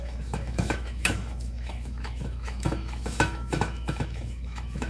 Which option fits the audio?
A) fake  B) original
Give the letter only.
A